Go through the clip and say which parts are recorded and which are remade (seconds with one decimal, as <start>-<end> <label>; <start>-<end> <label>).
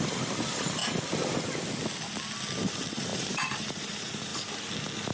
0.0-0.8 remade; 0.8-2.7 recorded; 2.7-4.3 remade; 4.3-5.1 recorded